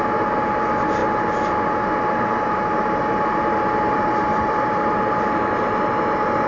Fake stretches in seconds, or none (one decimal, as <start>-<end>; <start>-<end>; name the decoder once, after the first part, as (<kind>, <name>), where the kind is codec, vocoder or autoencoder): 4.3-5.1 (vocoder, BigVGAN v2)